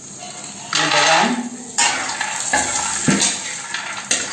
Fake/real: real